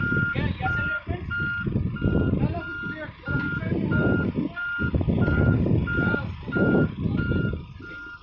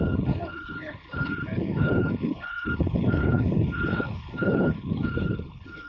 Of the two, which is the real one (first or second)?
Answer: first